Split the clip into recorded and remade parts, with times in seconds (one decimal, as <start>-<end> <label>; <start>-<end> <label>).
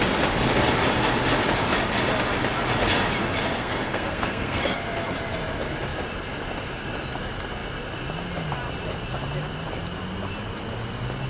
0.0-3.6 recorded; 3.6-4.6 remade; 4.6-11.3 recorded